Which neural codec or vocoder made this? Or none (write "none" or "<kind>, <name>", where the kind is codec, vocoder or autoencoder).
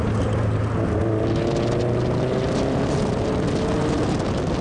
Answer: none